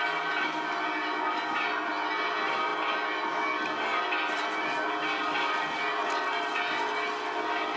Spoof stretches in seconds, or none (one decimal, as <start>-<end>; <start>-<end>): none